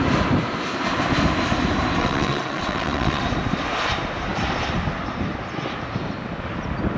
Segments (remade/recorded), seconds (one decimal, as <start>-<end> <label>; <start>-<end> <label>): 0.0-2.0 recorded; 2.0-3.2 remade; 3.2-7.0 recorded